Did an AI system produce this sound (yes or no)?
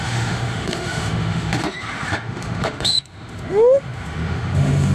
yes